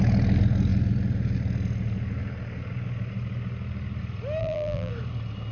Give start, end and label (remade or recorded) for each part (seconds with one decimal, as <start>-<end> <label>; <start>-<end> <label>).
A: 0.0-4.4 recorded; 4.4-4.9 remade; 4.9-5.5 recorded